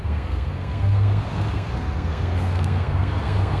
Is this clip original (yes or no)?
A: no